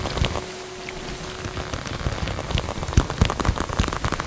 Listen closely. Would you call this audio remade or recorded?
recorded